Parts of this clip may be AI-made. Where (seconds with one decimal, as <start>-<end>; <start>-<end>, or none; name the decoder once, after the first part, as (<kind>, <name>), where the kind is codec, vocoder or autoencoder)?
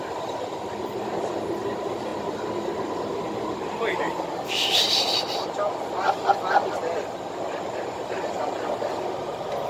none